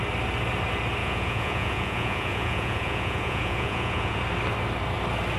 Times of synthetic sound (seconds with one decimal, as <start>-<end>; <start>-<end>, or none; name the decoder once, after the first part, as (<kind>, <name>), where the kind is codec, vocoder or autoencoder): 1.0-4.2 (vocoder, Vocos)